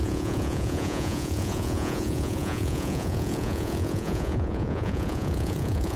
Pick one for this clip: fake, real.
fake